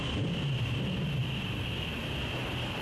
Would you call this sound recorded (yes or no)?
yes